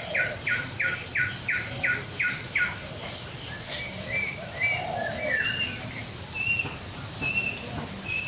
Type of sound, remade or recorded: recorded